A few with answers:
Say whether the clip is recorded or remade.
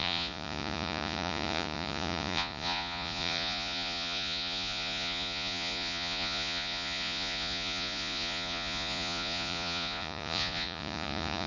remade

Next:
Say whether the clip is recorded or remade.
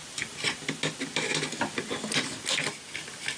recorded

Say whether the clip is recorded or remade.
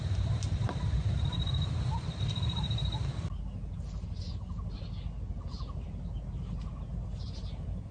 recorded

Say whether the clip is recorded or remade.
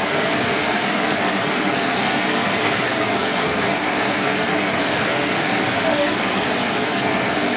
remade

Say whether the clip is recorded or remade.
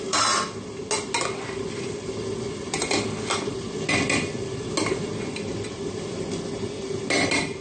recorded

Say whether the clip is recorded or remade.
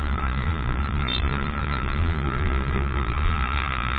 remade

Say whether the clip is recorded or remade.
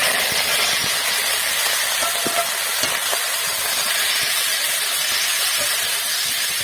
recorded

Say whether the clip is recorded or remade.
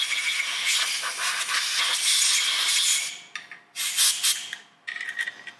recorded